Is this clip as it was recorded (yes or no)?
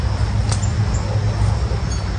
yes